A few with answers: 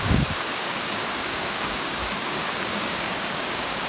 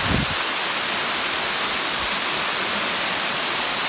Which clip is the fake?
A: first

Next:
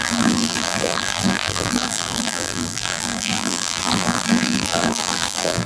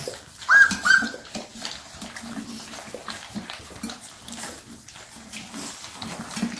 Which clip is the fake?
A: first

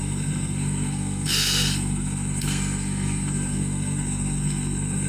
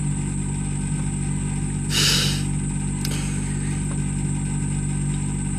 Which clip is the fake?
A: first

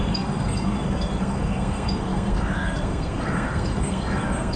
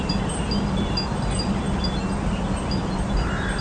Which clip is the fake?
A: first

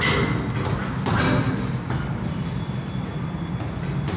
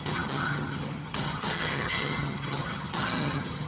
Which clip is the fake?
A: second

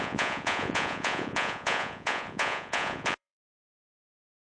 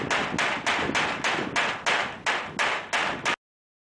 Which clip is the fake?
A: first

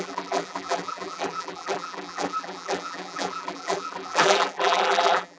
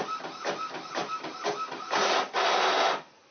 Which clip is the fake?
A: first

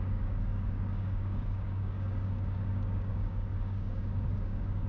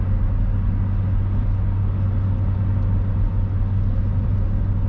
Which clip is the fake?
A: first